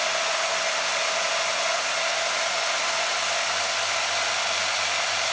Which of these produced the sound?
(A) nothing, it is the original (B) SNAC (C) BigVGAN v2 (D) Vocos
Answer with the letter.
A